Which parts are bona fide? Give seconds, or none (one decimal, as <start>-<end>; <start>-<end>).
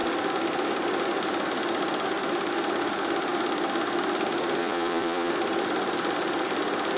0.0-4.6; 5.3-7.0